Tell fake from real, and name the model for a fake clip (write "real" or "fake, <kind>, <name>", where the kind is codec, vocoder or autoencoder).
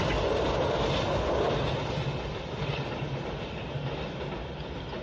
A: real